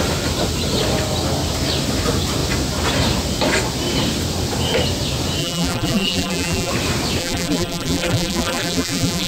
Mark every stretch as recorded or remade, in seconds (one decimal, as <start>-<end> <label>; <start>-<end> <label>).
0.0-5.4 recorded; 5.4-6.7 remade; 6.7-7.2 recorded; 7.2-9.3 remade